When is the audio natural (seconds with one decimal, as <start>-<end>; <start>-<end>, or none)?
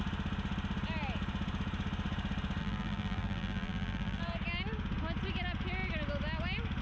0.0-2.6; 4.2-6.8